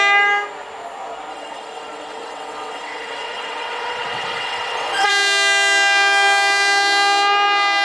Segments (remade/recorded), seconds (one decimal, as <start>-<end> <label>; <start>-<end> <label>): 0.0-1.3 recorded; 1.3-5.1 remade; 5.1-7.8 recorded